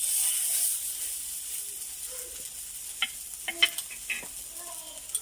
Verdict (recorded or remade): recorded